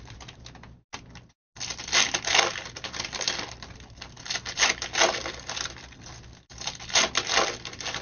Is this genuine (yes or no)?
yes